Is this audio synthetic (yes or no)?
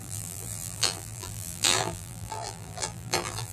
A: yes